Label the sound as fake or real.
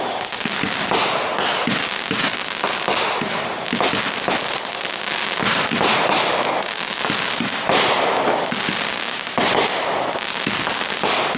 real